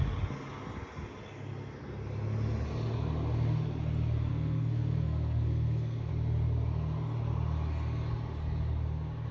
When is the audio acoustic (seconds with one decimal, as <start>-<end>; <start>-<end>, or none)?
0.0-4.3; 6.1-9.3

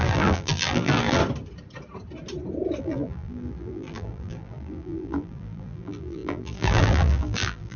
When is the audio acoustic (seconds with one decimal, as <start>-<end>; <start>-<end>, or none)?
1.2-2.8

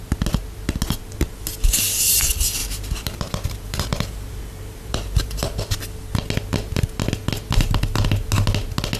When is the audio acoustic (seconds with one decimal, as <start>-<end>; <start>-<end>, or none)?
0.0-2.6; 5.6-9.0

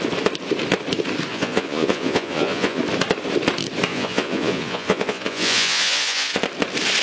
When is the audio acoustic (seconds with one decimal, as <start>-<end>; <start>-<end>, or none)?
0.0-1.3; 2.8-3.9; 6.4-7.0

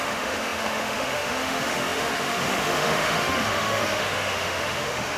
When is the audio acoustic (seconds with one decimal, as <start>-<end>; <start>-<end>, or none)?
none

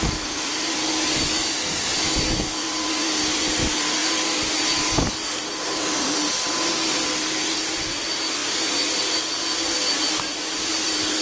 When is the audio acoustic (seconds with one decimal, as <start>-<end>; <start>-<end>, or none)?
0.0-11.2

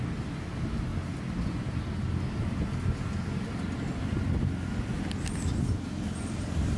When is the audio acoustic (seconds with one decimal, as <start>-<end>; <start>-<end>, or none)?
0.0-6.8

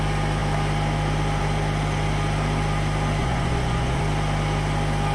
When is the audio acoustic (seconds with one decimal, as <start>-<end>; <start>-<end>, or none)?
0.0-3.2; 4.0-5.1